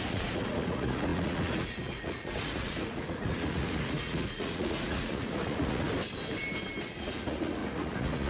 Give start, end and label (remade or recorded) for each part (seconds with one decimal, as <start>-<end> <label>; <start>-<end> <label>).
0.0-5.9 remade; 5.9-6.8 recorded; 6.8-8.3 remade